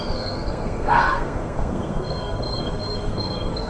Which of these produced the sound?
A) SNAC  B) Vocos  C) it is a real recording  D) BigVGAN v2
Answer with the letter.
A